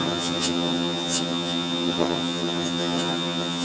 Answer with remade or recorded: remade